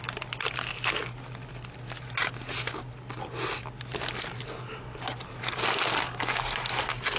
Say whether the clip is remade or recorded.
recorded